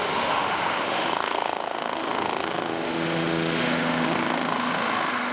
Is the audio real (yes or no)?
no